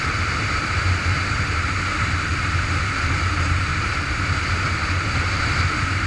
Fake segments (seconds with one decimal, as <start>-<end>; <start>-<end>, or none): 0.0-2.3; 3.3-3.7; 5.3-6.1